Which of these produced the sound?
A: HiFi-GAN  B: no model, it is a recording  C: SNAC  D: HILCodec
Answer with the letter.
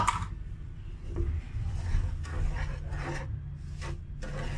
B